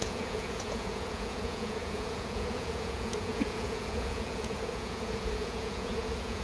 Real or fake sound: fake